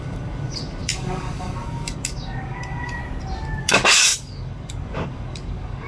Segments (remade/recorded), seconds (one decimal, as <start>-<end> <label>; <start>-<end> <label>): 0.0-3.0 remade; 3.0-3.6 recorded; 3.6-5.9 remade